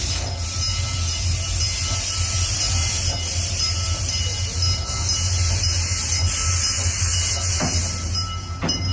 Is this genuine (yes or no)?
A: yes